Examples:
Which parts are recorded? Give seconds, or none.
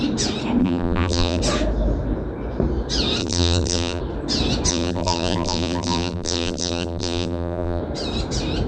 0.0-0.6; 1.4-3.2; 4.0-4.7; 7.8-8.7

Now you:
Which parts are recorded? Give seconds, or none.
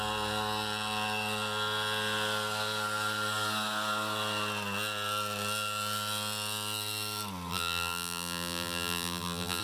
0.0-7.5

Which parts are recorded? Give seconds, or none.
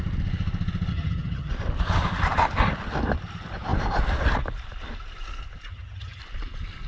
0.0-0.9; 1.5-5.7; 6.2-6.9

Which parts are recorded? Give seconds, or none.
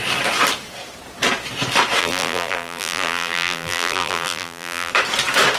0.0-2.0; 4.9-5.6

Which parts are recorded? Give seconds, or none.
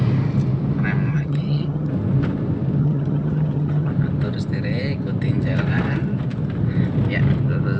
0.0-1.1; 1.9-2.8; 3.9-7.8